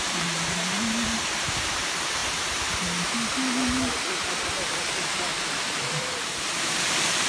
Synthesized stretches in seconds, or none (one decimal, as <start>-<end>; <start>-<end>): 0.0-5.3; 6.2-7.3